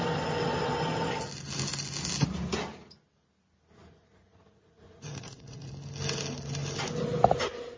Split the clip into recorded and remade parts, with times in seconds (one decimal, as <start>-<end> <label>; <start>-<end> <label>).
0.0-3.8 recorded; 3.8-5.7 remade; 5.7-7.8 recorded